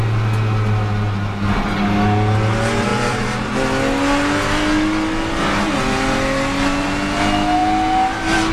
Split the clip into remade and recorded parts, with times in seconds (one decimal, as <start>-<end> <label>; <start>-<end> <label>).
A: 0.0-2.9 recorded; 2.9-3.5 remade; 3.5-8.5 recorded